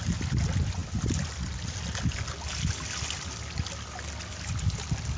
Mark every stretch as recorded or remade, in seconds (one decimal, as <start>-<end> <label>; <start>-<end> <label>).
0.0-5.2 recorded